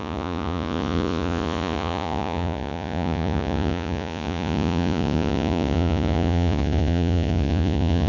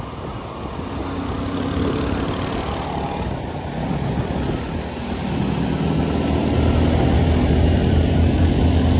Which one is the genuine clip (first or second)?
second